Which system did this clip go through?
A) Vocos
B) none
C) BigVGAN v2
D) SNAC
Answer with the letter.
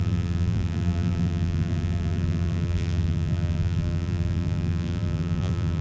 C